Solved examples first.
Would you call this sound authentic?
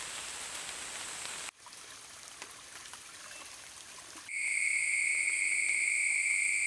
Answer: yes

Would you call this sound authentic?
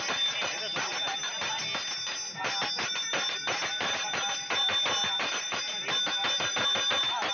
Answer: yes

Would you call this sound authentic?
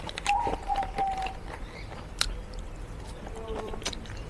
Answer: no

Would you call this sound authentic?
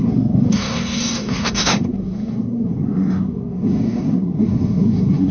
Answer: no